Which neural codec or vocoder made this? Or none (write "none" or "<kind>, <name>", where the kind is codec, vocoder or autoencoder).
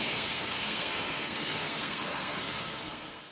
codec, SNAC